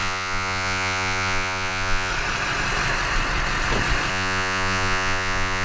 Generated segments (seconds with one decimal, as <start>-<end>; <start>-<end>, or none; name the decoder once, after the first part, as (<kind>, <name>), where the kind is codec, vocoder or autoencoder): 0.0-2.1 (vocoder, Vocos); 4.1-5.6